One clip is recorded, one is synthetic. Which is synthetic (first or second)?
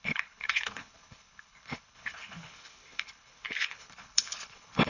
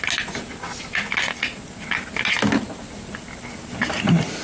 first